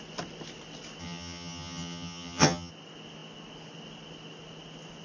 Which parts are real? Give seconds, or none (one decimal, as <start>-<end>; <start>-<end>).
0.0-1.0; 2.7-5.0